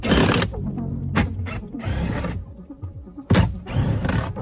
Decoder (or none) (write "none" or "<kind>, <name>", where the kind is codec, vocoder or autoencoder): none